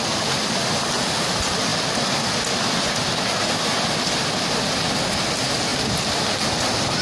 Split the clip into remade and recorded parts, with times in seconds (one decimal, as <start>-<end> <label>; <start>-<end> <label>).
0.0-7.0 recorded